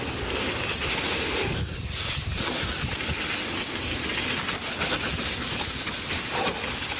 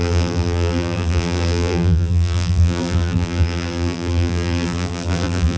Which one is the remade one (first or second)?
second